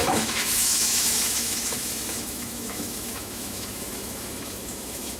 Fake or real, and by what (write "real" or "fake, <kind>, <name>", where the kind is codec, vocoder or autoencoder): fake, autoencoder, DAC-VAE